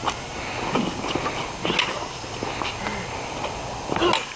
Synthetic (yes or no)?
no